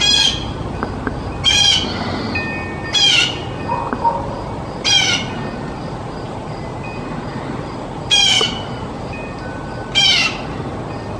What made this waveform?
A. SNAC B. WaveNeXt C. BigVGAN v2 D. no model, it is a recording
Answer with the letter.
D